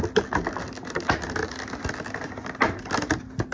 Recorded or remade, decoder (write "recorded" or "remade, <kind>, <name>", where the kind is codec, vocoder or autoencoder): recorded